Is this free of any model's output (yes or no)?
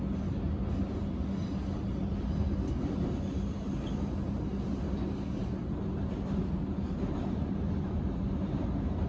yes